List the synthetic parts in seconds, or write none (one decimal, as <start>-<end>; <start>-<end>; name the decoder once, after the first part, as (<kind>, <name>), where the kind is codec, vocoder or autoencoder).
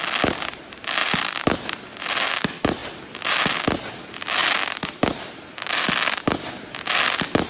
1.0-2.0 (vocoder, BigVGAN v2); 2.8-3.4; 4.4-6.2